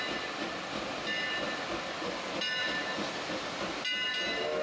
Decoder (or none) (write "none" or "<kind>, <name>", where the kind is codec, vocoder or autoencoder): none